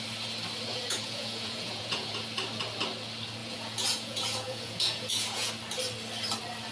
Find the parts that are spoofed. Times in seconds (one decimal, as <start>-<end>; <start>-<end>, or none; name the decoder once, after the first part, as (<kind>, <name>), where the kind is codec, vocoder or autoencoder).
0.7-2.2 (vocoder, Vocos); 3.4-5.5